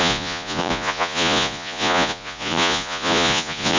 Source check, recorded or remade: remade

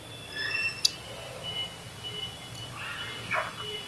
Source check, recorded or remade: recorded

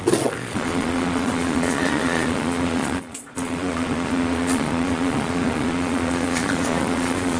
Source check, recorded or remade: remade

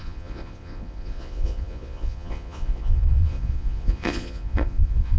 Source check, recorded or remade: remade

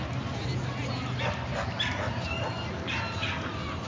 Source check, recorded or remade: recorded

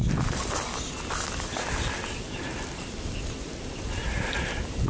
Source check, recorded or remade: recorded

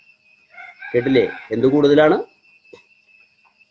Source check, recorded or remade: recorded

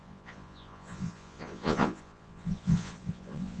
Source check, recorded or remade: remade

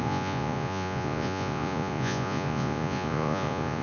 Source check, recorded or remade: remade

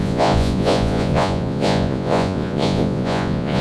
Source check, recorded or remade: remade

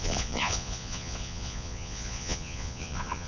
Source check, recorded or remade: remade